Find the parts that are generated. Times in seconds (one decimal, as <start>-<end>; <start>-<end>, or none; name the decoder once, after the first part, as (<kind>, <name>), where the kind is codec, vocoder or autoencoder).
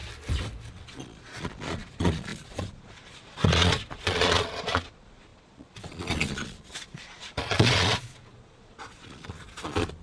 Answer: 0.7-10.0 (vocoder, Vocos)